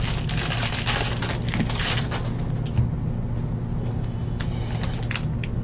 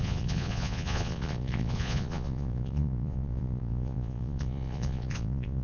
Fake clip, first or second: second